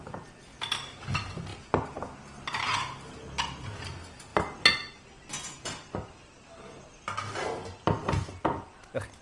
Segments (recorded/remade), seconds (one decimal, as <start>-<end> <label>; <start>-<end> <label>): 0.0-9.2 recorded